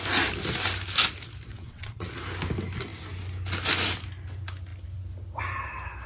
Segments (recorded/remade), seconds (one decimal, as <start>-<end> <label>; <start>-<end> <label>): 0.0-1.5 recorded; 1.5-2.1 remade; 2.1-6.1 recorded